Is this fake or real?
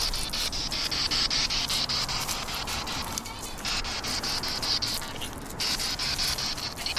real